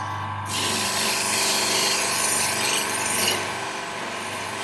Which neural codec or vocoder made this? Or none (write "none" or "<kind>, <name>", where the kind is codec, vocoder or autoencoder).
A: none